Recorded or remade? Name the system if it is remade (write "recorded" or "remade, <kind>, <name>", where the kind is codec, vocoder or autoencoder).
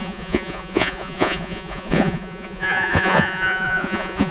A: remade, vocoder, Vocos